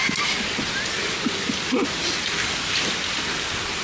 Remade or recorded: recorded